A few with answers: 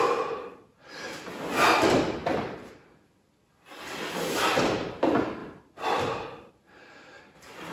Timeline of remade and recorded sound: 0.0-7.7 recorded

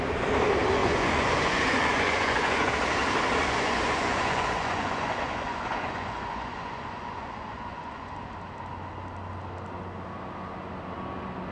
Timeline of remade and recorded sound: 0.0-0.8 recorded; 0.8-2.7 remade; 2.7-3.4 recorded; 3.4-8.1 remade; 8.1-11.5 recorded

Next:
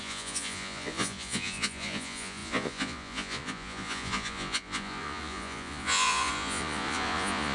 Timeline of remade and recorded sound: 0.0-7.5 remade

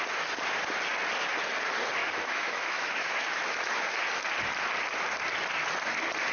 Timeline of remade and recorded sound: 0.0-2.0 recorded; 2.0-3.9 remade; 3.9-6.3 recorded

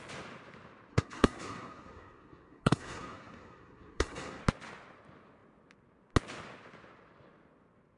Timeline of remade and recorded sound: 0.0-0.9 recorded; 0.9-4.4 remade; 4.4-8.0 recorded

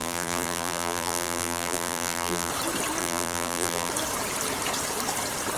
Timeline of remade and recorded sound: 0.0-2.5 remade; 2.5-3.0 recorded; 3.0-3.9 remade; 3.9-5.6 recorded

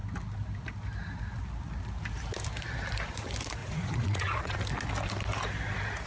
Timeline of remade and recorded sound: 0.0-3.6 recorded; 3.6-4.6 remade; 4.6-6.1 recorded